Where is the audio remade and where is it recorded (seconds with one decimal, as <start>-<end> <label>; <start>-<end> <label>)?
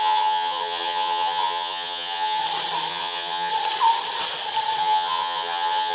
0.0-2.4 remade; 2.4-2.9 recorded; 2.9-3.5 remade; 3.5-4.8 recorded; 4.8-5.9 remade